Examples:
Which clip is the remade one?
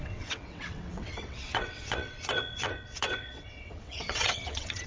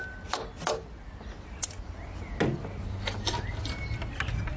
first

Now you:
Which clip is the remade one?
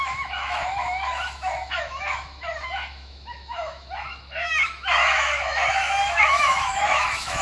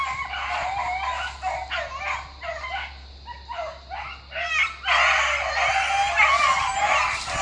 first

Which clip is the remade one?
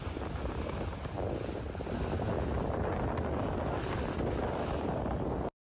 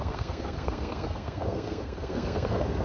second